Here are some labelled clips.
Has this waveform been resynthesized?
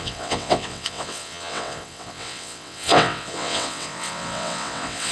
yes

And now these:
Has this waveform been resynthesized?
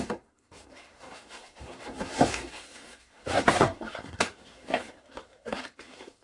yes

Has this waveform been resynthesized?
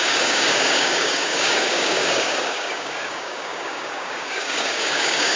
yes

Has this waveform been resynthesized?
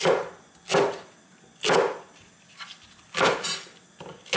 no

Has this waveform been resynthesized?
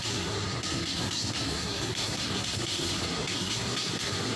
yes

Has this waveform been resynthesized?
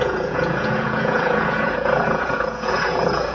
yes